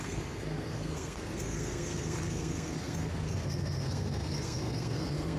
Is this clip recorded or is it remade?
remade